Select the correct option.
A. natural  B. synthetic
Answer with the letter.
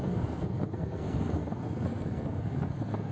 B